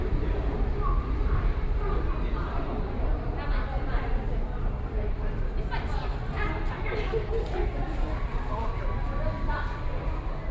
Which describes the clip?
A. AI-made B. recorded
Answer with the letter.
B